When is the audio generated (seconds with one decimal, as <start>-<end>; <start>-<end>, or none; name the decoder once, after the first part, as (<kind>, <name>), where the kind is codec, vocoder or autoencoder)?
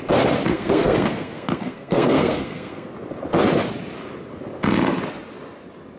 0.5-2.9 (codec, SNAC)